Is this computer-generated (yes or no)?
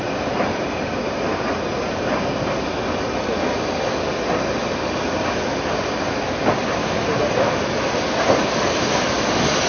no